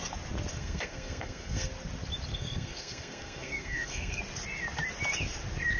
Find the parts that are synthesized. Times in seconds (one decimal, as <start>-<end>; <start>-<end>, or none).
0.5-1.7; 2.3-4.2